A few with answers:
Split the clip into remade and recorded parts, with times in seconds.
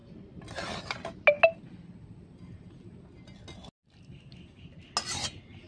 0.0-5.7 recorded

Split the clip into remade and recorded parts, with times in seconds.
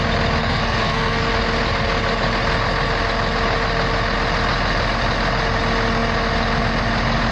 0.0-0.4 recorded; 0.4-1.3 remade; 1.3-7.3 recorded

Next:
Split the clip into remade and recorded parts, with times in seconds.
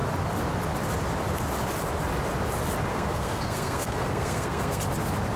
0.0-2.9 recorded; 2.9-4.8 remade; 4.8-5.4 recorded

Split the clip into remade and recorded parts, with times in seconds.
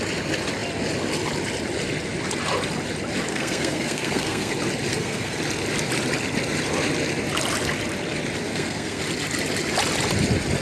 0.0-3.3 recorded; 3.3-4.5 remade; 4.5-4.9 recorded; 4.9-5.4 remade; 5.4-8.5 recorded; 8.5-9.0 remade; 9.0-10.6 recorded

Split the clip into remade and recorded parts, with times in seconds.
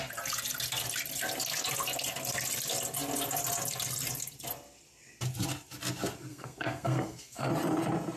0.0-6.3 recorded; 6.3-7.5 remade; 7.5-8.2 recorded